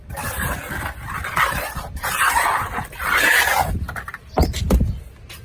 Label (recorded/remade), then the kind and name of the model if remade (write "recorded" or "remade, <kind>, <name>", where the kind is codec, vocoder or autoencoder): remade, vocoder, BigVGAN v2